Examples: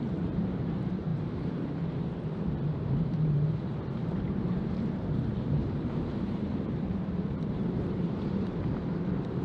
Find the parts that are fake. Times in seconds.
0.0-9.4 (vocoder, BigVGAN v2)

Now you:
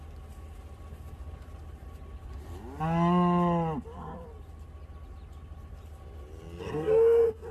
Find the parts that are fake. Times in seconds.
6.6-7.5 (codec, SNAC)

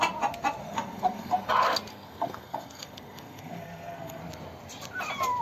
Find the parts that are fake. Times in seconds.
0.6-1.5 (codec, SNAC); 1.9-4.2

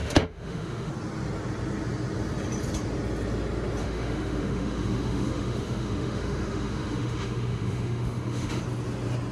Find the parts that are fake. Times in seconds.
0.0-0.9 (autoencoder, DAC-VAE); 3.8-8.6

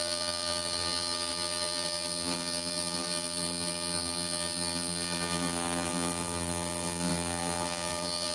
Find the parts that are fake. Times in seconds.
0.0-8.3 (vocoder, BigVGAN v2)

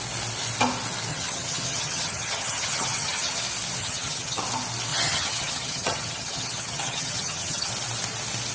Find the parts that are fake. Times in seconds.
1.1-3.4 (vocoder, HiFi-GAN); 3.8-4.4; 4.9-7.7

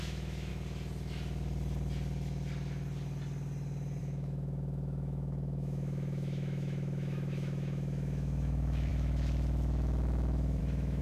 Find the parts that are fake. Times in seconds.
0.0-0.5 (autoencoder, DAC-VAE); 4.0-11.0